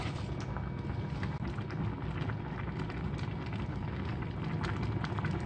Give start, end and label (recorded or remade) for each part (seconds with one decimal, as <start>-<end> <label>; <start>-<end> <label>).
0.0-3.7 recorded; 3.7-4.2 remade; 4.2-5.5 recorded